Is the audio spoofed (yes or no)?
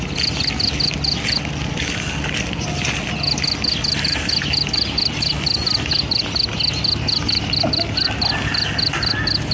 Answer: no